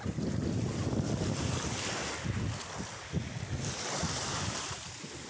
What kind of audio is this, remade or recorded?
recorded